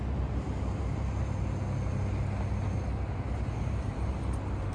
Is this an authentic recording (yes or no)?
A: yes